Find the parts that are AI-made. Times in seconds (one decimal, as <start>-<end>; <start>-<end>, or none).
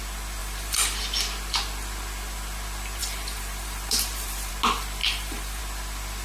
0.4-1.0; 3.0-4.5; 5.0-5.6